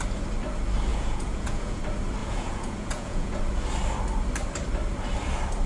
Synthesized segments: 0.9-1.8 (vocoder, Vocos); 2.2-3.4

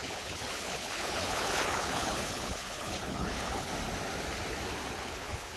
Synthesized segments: 0.0-3.7 (codec, HILCodec); 4.9-5.6

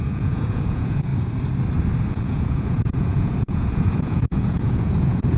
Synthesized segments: 0.0-1.1 (vocoder, Vocos); 2.1-5.4

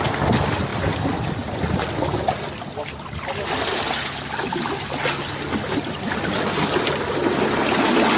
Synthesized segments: none

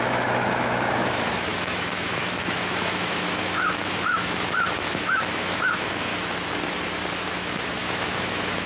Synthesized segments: 0.0-6.1 (autoencoder, DAC-VAE); 7.2-8.7